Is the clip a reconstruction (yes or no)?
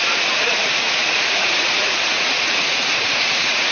yes